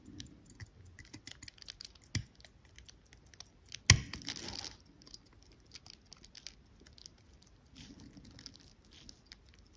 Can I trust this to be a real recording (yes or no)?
yes